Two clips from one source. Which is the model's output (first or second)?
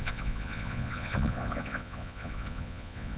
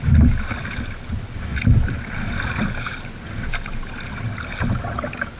first